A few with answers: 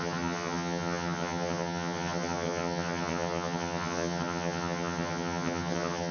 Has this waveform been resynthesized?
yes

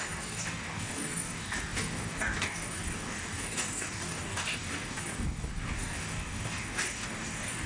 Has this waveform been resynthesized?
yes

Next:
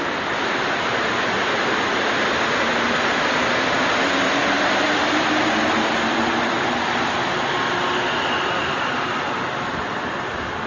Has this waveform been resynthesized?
no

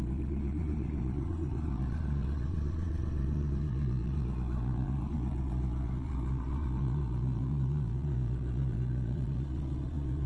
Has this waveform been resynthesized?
yes